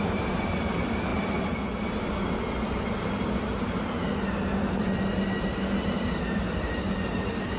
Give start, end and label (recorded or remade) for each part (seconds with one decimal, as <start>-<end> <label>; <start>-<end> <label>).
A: 0.0-7.6 recorded